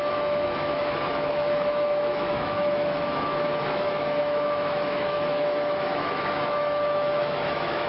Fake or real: fake